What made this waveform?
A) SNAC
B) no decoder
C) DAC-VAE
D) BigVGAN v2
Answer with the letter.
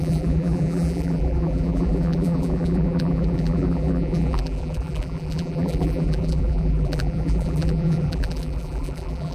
D